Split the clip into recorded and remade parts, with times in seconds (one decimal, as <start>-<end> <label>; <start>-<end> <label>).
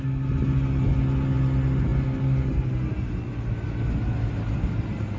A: 0.0-5.2 recorded